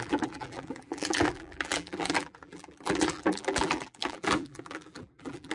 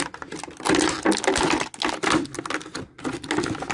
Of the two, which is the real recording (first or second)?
second